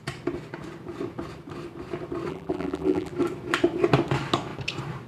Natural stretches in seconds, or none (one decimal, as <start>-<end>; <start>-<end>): 0.0-2.3; 3.1-5.1